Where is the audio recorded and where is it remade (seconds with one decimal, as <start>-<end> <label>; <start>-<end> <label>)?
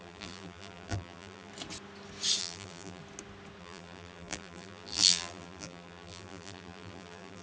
0.0-1.5 remade; 1.5-2.4 recorded; 2.4-3.0 remade; 3.0-3.6 recorded; 3.6-7.4 remade